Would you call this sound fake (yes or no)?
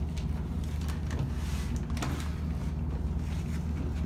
no